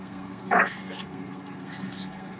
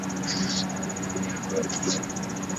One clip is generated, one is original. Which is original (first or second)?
second